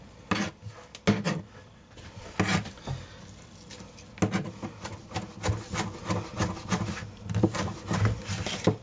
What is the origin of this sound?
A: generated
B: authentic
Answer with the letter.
B